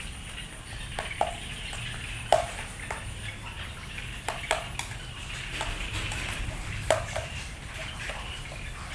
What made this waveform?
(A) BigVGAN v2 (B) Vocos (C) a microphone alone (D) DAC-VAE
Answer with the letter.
C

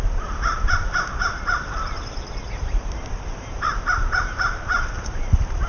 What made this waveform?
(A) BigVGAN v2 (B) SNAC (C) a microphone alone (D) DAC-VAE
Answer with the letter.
A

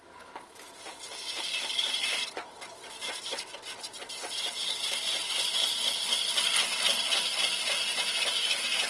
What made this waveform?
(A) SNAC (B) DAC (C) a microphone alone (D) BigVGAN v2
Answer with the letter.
C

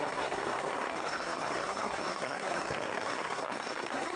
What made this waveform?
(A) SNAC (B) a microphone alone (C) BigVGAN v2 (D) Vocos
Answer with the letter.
A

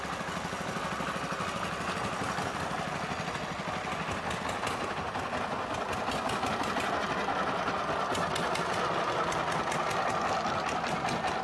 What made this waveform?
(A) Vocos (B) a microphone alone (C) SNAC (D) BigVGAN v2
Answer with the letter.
B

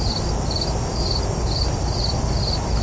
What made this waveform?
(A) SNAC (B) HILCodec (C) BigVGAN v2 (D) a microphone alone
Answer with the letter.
D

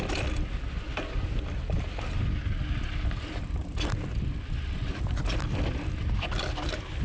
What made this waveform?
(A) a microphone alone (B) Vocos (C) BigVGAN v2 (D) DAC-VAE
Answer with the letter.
A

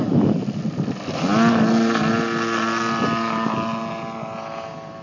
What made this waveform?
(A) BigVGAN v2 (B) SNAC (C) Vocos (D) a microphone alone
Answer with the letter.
D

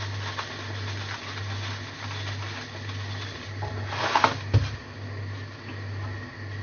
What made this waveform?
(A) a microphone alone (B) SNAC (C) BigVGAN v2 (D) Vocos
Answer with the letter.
A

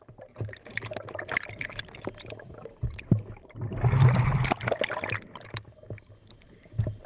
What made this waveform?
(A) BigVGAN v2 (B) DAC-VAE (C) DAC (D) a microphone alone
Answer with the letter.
D